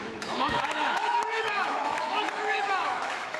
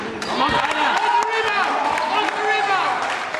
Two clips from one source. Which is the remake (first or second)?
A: first